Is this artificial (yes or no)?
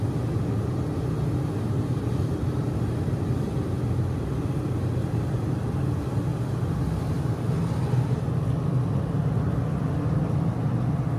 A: no